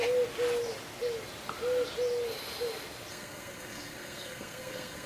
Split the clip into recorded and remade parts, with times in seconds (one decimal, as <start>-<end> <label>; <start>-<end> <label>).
0.0-3.1 recorded; 3.1-5.1 remade